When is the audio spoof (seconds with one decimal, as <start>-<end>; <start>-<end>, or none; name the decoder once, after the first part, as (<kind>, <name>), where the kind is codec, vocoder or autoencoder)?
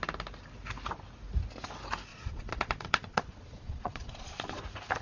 2.1-4.6 (vocoder, Vocos)